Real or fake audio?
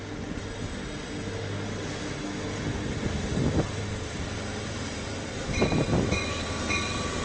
real